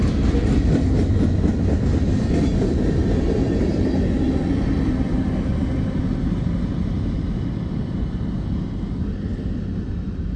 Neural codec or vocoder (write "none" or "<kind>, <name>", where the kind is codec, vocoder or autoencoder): none